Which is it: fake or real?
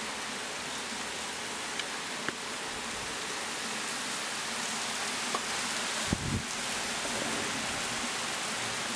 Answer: real